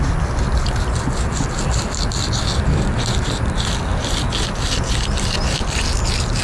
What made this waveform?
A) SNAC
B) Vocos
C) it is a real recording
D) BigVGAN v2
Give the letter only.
C